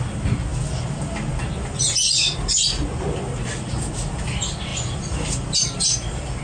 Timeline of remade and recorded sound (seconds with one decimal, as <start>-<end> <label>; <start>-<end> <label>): 0.0-0.5 recorded; 0.5-1.3 remade; 1.3-4.7 recorded; 4.7-6.4 remade